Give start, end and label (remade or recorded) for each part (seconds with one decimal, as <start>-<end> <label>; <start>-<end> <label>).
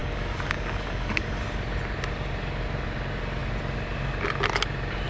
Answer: 0.0-1.4 remade; 1.4-5.1 recorded